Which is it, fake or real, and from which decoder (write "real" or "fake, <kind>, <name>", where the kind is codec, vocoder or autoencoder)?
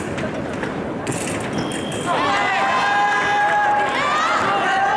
real